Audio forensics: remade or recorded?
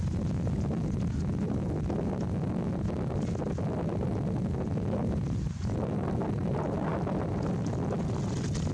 recorded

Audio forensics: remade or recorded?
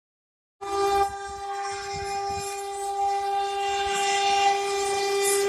recorded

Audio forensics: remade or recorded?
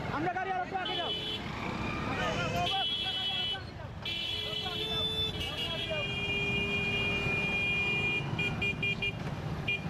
recorded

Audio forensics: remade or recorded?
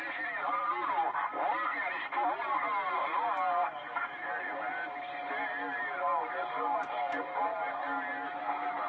recorded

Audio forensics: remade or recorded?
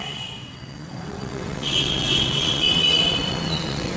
remade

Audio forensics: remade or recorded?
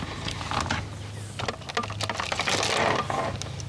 recorded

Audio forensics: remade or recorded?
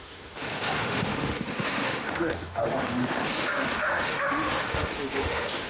remade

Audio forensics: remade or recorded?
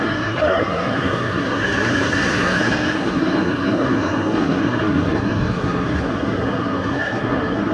remade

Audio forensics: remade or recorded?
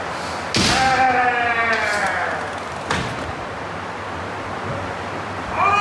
recorded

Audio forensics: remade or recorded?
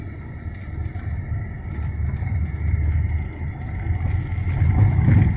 recorded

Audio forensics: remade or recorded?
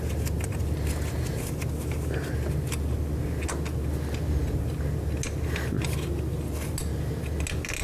recorded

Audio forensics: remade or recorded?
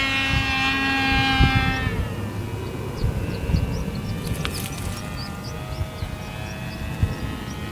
recorded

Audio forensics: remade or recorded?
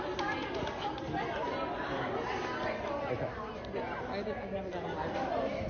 recorded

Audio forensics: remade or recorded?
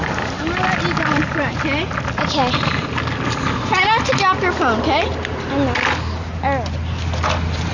recorded